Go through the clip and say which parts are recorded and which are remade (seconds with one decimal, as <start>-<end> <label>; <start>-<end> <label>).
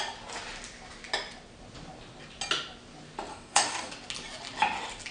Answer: 0.0-3.3 recorded; 3.3-3.9 remade; 3.9-5.1 recorded